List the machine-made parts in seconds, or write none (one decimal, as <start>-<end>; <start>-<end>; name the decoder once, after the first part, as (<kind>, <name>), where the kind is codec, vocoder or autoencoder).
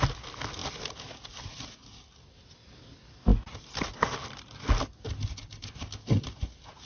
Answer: none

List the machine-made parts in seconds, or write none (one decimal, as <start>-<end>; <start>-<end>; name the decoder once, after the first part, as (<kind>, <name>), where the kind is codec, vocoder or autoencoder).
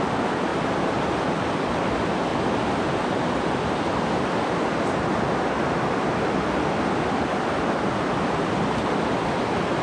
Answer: 0.5-1.0 (vocoder, BigVGAN v2)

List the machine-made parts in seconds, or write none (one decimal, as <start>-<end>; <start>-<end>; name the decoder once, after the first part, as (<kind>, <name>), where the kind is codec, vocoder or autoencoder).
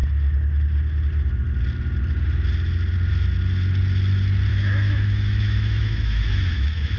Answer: 4.5-7.0 (autoencoder, DAC-VAE)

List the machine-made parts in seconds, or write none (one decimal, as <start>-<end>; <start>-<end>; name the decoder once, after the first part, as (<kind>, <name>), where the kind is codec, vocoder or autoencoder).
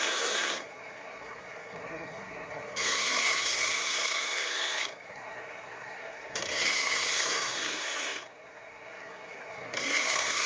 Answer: 0.0-10.5 (codec, SNAC)